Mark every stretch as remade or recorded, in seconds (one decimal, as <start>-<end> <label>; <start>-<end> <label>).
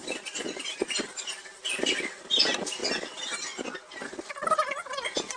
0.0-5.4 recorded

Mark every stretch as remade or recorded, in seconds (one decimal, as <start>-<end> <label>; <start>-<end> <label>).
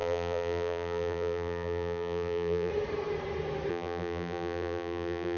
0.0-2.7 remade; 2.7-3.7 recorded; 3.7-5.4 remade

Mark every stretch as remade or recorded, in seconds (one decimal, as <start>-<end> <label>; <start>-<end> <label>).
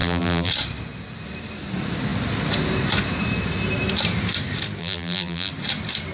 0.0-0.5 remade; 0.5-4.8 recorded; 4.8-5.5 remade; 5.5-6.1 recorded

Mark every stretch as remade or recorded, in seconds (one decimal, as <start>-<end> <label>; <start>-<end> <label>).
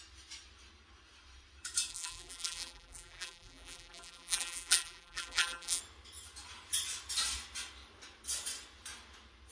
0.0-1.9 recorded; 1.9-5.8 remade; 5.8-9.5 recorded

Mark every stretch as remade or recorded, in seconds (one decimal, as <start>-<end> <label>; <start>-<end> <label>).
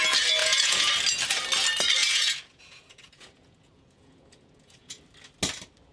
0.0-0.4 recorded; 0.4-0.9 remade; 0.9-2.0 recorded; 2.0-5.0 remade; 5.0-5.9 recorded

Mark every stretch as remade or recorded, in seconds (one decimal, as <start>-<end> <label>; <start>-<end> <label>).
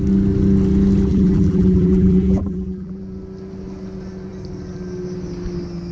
0.0-1.1 recorded; 1.1-3.0 remade; 3.0-5.9 recorded